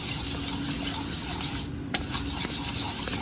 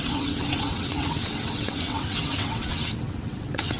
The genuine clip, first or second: first